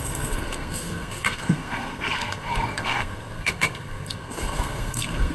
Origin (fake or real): fake